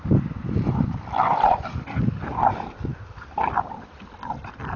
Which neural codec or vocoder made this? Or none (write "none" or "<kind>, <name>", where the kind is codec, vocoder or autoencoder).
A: none